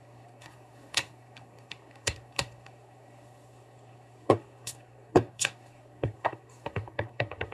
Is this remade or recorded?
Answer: remade